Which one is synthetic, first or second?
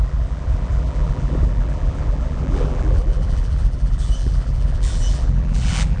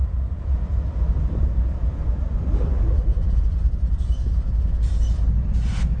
first